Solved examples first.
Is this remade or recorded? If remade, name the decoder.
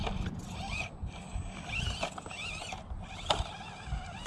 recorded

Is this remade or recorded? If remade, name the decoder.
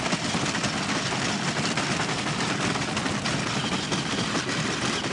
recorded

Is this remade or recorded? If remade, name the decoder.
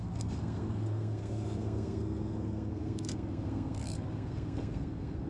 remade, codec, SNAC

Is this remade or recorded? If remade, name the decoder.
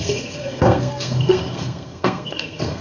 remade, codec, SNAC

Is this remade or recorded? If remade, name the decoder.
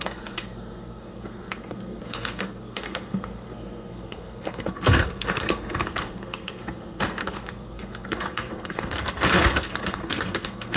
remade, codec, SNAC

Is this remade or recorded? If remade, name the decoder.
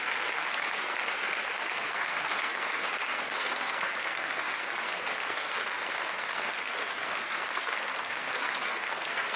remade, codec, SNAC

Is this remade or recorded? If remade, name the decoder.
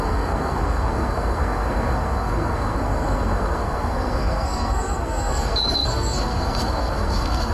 remade, codec, SNAC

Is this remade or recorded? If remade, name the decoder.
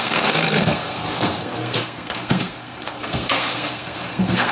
remade, codec, SNAC